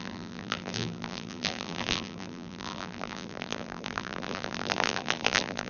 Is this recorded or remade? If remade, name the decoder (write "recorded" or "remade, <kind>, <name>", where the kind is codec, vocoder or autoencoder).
remade, vocoder, BigVGAN v2